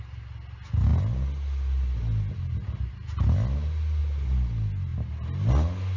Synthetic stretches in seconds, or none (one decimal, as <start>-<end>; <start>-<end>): none